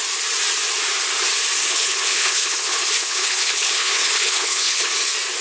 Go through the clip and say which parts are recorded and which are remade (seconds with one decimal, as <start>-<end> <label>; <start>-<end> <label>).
0.0-1.7 recorded; 1.7-4.9 remade; 4.9-5.4 recorded